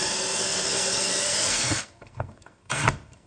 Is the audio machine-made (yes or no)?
yes